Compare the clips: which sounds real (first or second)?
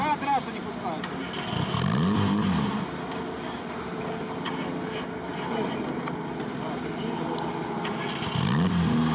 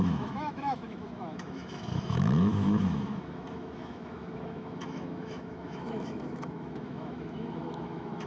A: first